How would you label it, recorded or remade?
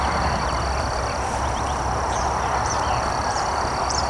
remade